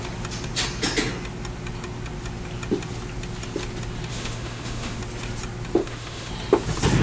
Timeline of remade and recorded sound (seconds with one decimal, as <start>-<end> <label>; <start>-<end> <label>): 0.0-4.1 recorded; 4.1-5.0 remade; 5.0-5.8 recorded; 5.8-6.3 remade; 6.3-7.0 recorded